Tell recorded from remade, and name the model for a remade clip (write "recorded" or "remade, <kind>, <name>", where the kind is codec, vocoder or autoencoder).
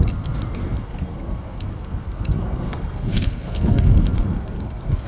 remade, codec, SNAC